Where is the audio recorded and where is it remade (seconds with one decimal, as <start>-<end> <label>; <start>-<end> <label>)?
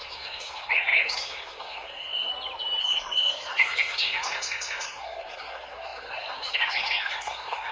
0.0-2.3 remade; 2.3-2.8 recorded; 2.8-7.7 remade